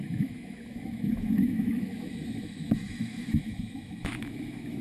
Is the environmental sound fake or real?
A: fake